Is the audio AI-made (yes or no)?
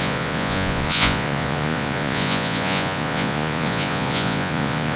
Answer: yes